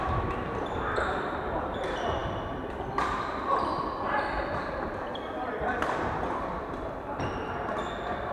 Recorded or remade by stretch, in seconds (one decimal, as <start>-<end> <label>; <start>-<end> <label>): 0.0-8.3 remade